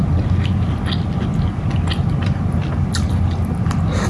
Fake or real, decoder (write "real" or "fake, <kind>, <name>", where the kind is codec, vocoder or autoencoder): real